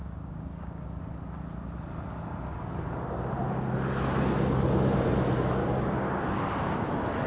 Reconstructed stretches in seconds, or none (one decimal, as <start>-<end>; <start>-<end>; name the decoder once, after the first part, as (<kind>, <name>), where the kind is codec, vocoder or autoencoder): 0.0-1.0 (codec, DAC); 5.6-6.2